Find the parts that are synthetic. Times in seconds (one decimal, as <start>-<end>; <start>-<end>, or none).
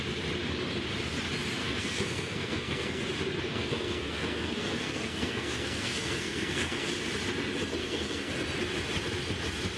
1.6-3.0; 3.5-6.9; 7.8-8.3